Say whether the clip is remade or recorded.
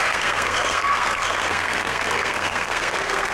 remade